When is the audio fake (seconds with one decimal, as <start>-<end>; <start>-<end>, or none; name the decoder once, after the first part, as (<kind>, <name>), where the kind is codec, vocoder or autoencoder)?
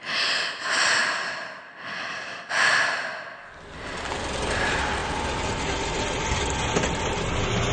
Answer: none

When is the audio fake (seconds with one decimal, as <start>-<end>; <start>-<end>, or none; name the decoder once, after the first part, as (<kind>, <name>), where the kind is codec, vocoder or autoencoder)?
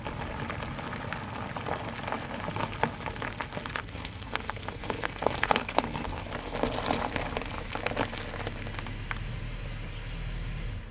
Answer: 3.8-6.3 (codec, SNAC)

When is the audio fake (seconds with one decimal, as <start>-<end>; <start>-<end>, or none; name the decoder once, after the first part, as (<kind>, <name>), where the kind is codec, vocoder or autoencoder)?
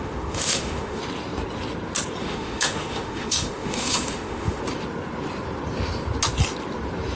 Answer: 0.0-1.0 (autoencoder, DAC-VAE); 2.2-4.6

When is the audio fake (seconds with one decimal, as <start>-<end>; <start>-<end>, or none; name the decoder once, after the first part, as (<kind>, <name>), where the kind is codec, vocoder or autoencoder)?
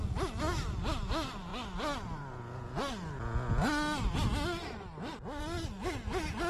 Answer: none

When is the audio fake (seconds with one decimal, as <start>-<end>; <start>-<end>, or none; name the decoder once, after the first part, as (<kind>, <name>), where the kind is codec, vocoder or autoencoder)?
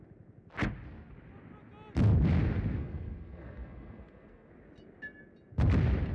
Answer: 2.8-4.5 (codec, SNAC)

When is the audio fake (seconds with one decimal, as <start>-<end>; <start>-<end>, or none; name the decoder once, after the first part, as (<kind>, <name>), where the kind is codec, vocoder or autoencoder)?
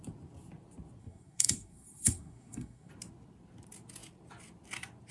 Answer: 1.0-2.9 (codec, SNAC)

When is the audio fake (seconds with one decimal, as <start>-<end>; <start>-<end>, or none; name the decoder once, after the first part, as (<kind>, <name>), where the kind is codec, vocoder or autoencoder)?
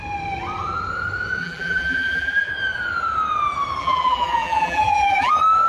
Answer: 1.4-2.5 (vocoder, BigVGAN v2); 3.8-5.3